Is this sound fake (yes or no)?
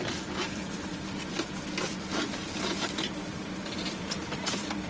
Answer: yes